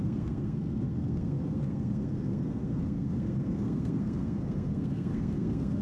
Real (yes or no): no